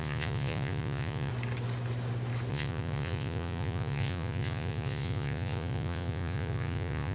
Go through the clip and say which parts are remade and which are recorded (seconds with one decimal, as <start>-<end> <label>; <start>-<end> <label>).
0.0-1.3 remade; 1.3-2.5 recorded; 2.5-7.1 remade